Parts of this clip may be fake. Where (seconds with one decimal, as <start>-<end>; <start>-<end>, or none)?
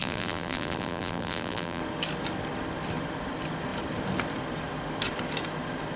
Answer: 0.0-1.8